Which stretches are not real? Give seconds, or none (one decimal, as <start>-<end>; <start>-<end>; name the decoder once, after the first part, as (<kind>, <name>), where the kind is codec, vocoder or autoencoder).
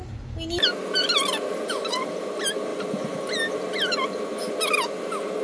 none